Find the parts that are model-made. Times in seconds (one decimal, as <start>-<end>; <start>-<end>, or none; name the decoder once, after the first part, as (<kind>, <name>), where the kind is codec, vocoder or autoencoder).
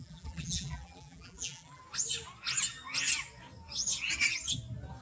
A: 0.0-1.8 (vocoder, BigVGAN v2)